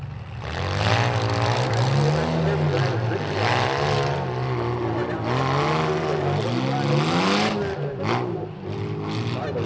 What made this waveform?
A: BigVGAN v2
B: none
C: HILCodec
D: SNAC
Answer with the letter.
B